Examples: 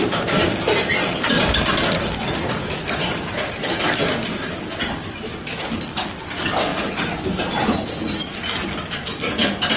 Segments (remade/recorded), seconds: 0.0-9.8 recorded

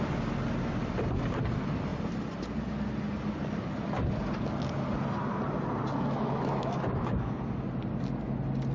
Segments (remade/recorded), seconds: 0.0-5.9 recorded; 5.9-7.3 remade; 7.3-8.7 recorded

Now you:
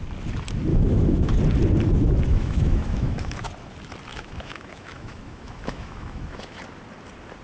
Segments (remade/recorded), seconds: 0.0-0.7 recorded; 0.7-1.3 remade; 1.3-2.3 recorded; 2.3-3.5 remade; 3.5-4.1 recorded; 4.1-6.6 remade; 6.6-7.4 recorded

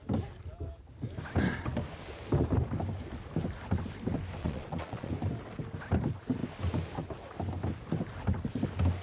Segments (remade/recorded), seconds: 0.0-4.4 recorded; 4.4-5.1 remade; 5.1-9.0 recorded

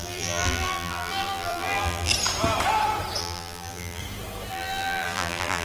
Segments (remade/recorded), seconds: 0.0-2.1 remade; 2.1-3.2 recorded; 3.2-4.0 remade; 4.0-4.5 recorded; 4.5-5.6 remade

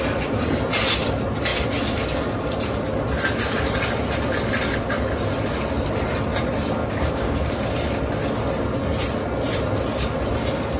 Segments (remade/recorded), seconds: 0.0-6.8 recorded; 6.8-7.5 remade; 7.5-10.8 recorded

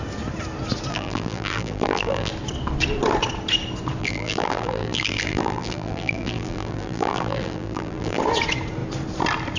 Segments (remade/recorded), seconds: 0.0-0.9 recorded; 0.9-2.3 remade; 2.3-4.0 recorded; 4.0-8.2 remade; 8.2-9.6 recorded